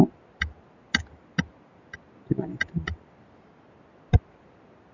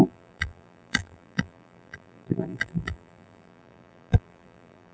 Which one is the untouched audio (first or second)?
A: first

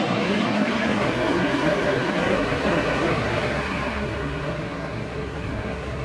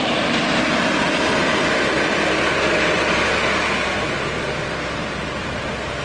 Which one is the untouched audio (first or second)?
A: second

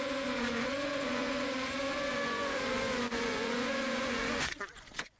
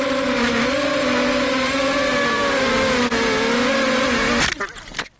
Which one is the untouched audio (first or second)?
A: second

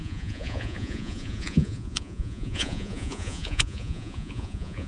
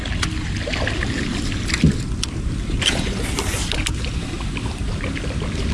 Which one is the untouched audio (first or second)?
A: second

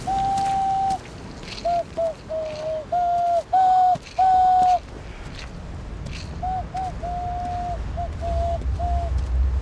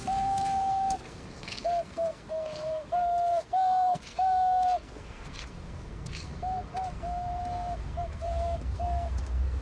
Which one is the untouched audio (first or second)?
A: first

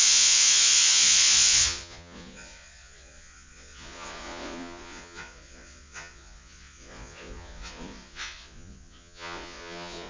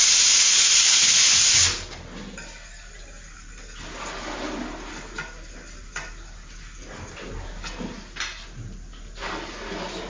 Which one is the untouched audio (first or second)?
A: second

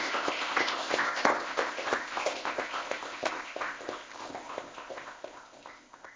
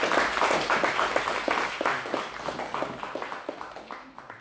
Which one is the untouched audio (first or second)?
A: second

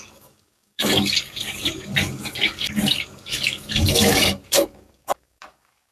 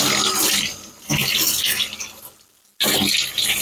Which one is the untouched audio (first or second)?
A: second